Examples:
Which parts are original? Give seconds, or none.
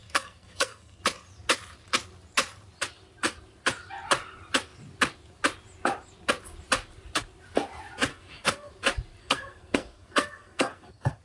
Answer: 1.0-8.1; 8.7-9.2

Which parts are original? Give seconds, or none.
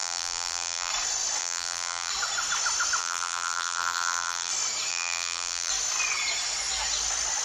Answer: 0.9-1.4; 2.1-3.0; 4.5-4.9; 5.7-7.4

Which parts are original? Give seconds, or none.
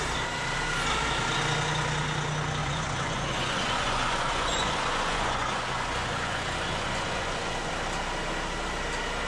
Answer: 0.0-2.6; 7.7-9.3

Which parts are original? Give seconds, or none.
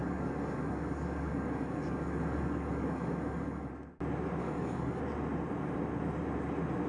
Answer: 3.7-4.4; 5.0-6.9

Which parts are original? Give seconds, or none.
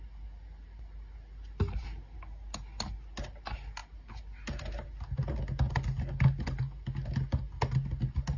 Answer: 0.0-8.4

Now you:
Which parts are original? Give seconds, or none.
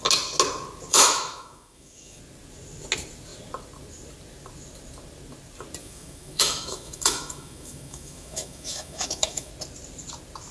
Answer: 0.0-0.9; 2.2-5.8; 9.5-10.5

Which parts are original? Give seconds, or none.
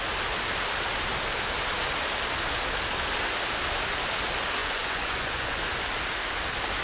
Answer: 0.0-4.6; 5.6-6.8